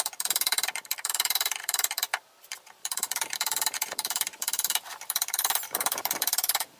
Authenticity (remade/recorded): remade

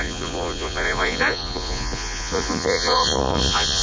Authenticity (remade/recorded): remade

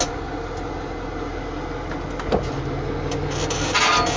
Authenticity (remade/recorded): recorded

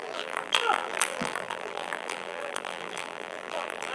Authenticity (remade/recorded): remade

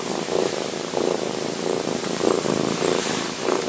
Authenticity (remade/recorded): remade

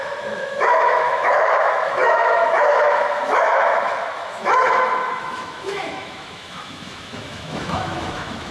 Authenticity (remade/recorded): remade